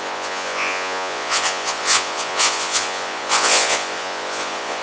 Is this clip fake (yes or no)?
yes